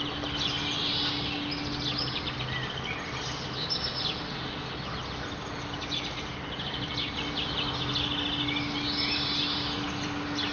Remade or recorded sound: recorded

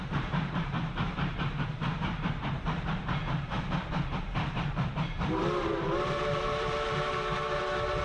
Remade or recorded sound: remade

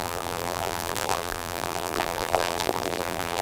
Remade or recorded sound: remade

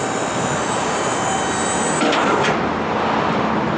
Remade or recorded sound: remade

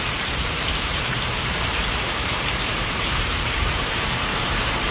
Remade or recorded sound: remade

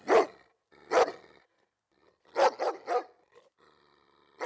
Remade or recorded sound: recorded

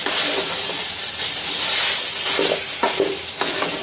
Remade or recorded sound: recorded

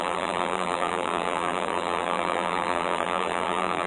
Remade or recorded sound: remade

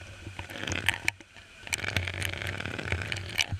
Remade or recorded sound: remade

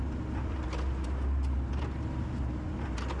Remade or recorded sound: recorded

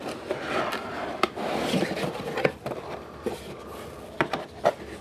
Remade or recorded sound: remade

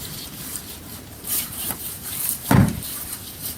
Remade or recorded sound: remade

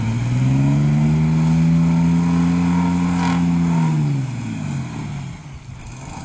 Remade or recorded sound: recorded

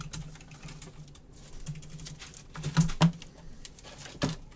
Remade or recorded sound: recorded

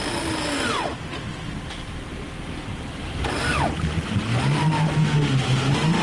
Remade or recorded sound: recorded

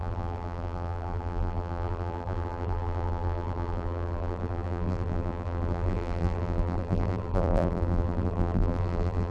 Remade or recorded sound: remade